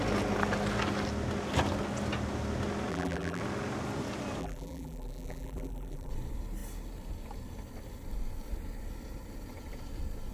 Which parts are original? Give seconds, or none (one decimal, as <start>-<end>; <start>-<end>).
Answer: 0.0-2.9; 3.4-4.4; 6.1-10.3